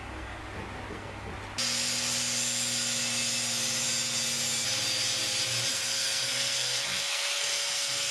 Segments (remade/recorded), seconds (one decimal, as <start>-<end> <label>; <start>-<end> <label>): 0.0-0.4 remade; 0.4-0.9 recorded; 0.9-1.3 remade; 1.3-5.7 recorded; 5.7-8.1 remade